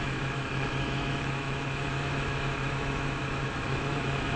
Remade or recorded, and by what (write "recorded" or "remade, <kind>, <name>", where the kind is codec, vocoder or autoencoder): remade, autoencoder, DAC-VAE